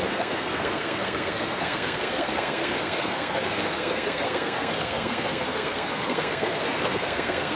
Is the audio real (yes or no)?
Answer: no